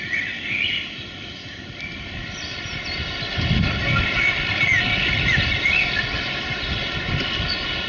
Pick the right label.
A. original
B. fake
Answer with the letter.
A